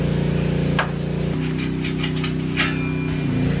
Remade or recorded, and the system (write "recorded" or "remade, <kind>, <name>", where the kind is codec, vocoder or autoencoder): recorded